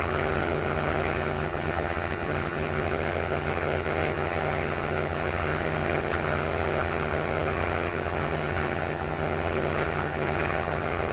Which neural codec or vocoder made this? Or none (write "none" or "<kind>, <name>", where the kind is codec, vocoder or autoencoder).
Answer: vocoder, HiFi-GAN